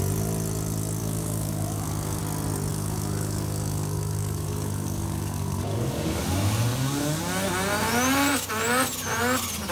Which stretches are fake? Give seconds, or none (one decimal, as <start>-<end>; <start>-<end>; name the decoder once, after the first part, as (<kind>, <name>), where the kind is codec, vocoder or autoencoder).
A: 1.0-2.2 (codec, DAC); 2.7-6.2; 6.7-7.2